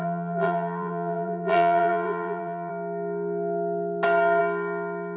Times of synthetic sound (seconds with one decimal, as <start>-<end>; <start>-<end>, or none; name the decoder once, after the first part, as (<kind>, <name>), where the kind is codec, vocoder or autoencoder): 0.0-2.7 (vocoder, BigVGAN v2)